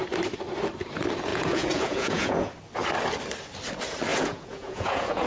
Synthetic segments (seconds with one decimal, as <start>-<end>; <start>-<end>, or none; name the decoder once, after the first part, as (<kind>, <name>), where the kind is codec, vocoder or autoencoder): 1.3-2.5 (vocoder, Vocos); 4.1-5.3